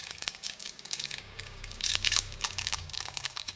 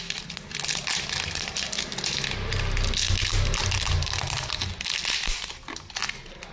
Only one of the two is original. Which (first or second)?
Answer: second